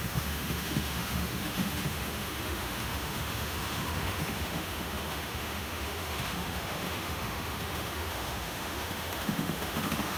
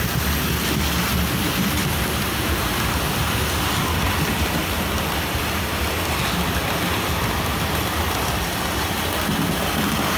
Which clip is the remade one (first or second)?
first